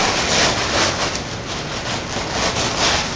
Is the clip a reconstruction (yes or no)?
no